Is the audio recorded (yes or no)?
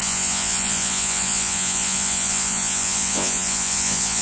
no